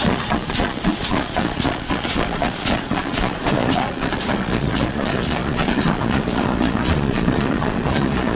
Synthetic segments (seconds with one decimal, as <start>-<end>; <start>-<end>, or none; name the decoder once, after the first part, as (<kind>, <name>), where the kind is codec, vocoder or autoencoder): 0.0-8.4 (vocoder, Vocos)